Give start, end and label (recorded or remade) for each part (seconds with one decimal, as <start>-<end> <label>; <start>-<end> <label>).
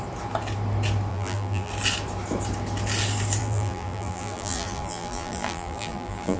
0.0-1.1 recorded; 1.1-1.7 remade; 1.7-3.4 recorded; 3.4-6.4 remade